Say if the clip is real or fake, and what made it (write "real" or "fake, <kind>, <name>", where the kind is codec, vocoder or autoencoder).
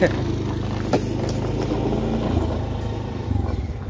real